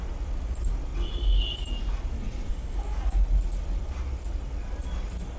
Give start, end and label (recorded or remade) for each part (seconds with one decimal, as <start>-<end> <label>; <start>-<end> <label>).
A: 0.0-2.5 recorded; 2.5-3.0 remade; 3.0-5.4 recorded